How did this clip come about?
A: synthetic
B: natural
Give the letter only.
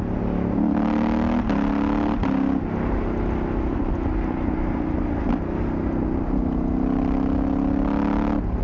B